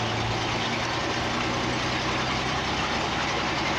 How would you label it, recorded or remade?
recorded